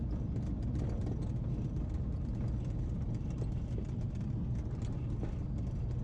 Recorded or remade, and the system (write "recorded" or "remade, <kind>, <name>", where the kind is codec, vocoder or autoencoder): recorded